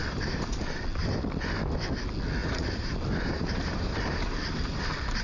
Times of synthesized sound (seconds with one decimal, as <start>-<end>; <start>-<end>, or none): 0.0-0.6; 2.4-4.8